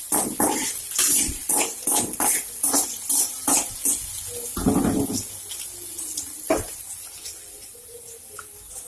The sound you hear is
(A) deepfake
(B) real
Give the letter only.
B